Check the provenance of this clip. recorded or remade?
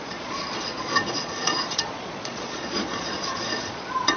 remade